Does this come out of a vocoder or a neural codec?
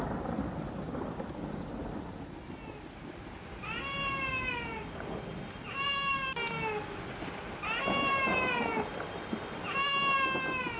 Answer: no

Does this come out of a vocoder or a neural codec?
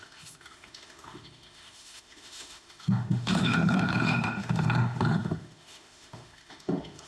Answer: yes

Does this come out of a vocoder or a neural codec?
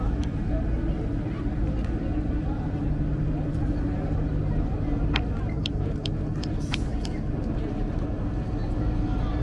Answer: no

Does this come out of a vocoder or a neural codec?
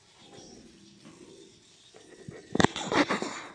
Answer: no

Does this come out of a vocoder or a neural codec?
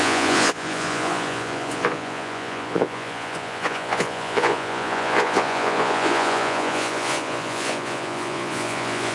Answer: yes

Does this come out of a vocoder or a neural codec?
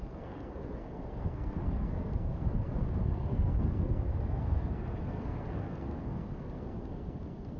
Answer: yes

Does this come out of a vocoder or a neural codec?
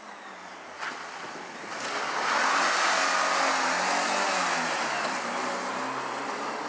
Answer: no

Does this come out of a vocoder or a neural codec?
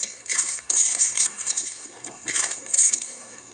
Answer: yes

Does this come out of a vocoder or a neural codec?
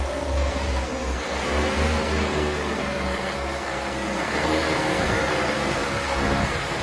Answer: yes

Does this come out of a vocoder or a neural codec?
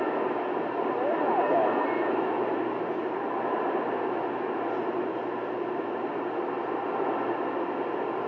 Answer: no